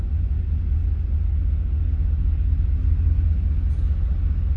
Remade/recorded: recorded